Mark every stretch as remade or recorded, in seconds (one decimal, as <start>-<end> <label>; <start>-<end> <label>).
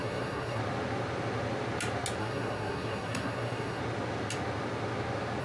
0.0-0.6 remade; 0.6-2.2 recorded; 2.2-3.8 remade; 3.8-5.4 recorded